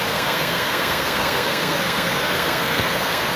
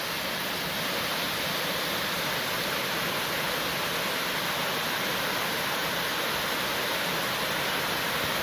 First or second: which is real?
second